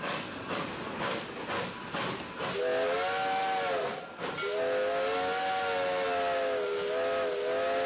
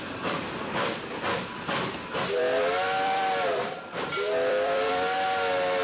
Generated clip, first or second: second